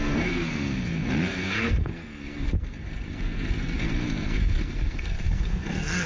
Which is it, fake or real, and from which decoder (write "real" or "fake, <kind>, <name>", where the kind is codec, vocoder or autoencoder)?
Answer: fake, codec, SNAC